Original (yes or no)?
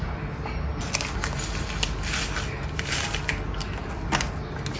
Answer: yes